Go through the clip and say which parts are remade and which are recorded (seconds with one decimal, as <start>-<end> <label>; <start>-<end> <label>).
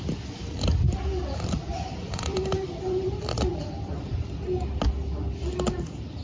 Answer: 0.0-1.7 recorded; 1.7-2.8 remade; 2.8-6.2 recorded